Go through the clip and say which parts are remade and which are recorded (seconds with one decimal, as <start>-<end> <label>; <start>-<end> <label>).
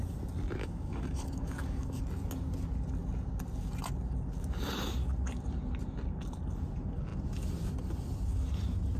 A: 0.0-0.6 recorded; 0.6-2.0 remade; 2.0-9.0 recorded